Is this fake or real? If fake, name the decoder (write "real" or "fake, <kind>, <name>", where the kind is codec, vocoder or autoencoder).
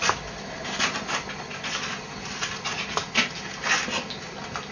real